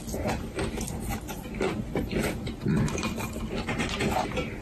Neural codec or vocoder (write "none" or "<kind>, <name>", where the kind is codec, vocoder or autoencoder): none